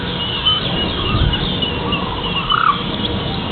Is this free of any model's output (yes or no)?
yes